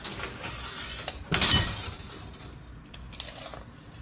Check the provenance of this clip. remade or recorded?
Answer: recorded